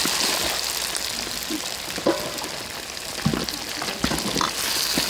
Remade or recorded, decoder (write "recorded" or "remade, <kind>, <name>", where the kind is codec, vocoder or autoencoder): recorded